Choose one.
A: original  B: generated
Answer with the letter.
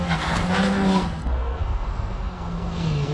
B